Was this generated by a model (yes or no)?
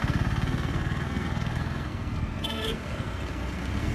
yes